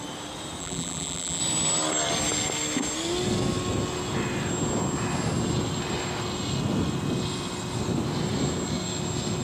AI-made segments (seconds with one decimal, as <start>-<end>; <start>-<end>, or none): 0.6-1.4